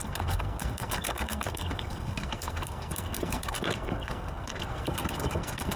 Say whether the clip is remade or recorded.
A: remade